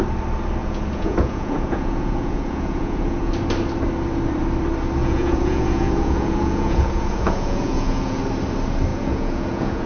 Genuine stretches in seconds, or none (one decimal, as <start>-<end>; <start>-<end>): 0.0-0.6; 3.3-5.0; 8.2-8.9